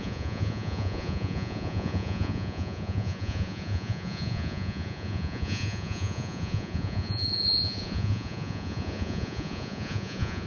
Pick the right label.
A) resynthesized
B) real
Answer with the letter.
A